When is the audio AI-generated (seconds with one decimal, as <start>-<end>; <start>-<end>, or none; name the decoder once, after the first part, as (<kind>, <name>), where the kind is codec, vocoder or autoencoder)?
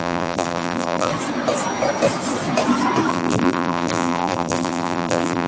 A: 0.0-1.1 (vocoder, BigVGAN v2); 3.1-5.5